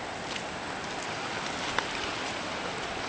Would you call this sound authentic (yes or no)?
yes